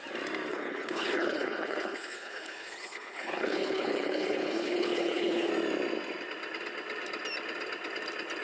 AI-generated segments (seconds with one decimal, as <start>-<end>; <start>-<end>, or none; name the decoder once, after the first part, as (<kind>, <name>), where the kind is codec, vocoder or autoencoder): 0.5-5.5 (codec, HILCodec)